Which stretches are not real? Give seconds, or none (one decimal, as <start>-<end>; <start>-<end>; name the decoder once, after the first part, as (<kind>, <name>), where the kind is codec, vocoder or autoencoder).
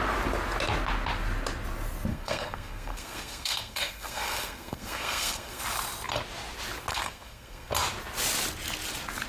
2.1-5.6 (codec, SNAC); 6.9-7.7